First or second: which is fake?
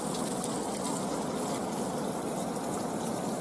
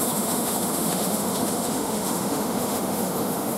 second